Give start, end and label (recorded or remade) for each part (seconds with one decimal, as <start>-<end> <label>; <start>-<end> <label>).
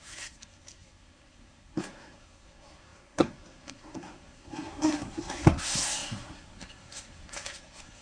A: 0.0-8.0 remade